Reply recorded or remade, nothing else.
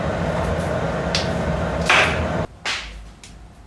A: recorded